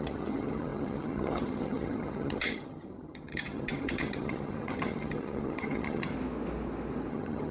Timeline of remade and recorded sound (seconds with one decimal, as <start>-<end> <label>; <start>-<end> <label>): 0.0-6.1 remade; 6.1-7.1 recorded; 7.1-7.5 remade